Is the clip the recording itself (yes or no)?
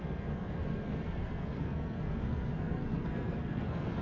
no